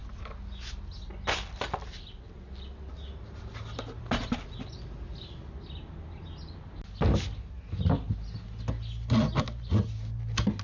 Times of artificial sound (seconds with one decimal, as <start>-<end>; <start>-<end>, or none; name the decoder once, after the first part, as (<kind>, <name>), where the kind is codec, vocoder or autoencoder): none